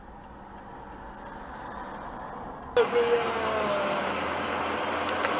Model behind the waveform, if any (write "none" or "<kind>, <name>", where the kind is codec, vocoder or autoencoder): none